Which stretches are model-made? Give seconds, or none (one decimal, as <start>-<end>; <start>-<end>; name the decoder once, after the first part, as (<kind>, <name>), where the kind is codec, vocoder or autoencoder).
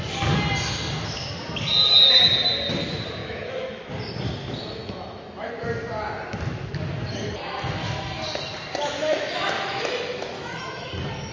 3.2-3.9 (autoencoder, DAC-VAE); 4.8-5.5; 9.0-10.9